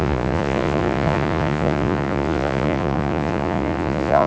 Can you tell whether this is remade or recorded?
remade